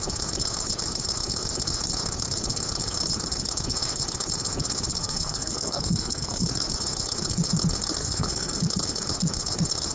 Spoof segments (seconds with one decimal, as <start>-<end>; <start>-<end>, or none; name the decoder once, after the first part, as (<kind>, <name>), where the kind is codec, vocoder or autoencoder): 5.0-6.5 (codec, SNAC); 8.0-8.6